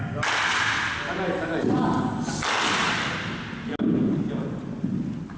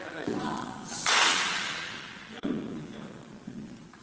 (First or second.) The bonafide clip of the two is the first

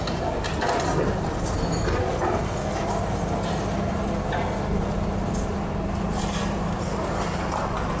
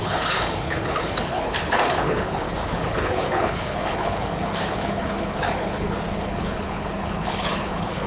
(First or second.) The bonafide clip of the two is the first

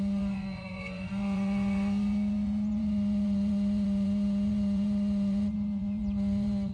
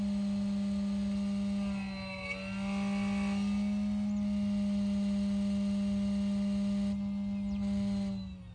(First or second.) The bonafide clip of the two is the second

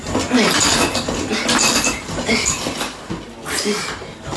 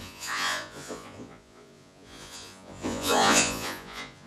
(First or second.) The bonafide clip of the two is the first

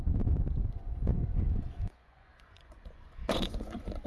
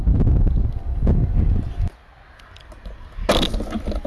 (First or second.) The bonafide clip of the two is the second